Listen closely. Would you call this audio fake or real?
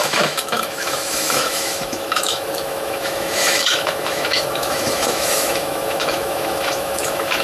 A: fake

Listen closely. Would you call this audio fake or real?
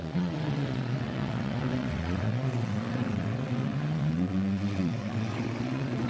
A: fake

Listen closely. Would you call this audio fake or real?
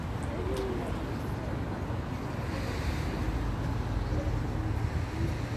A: real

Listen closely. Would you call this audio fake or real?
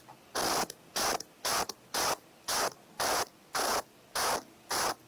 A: real